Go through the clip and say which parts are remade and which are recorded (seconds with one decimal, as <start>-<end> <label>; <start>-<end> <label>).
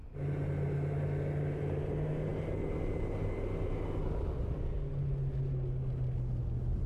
0.0-6.9 recorded